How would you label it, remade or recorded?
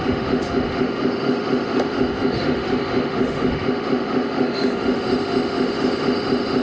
remade